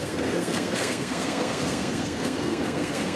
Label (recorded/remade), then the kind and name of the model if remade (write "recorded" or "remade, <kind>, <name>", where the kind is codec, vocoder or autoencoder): remade, codec, SNAC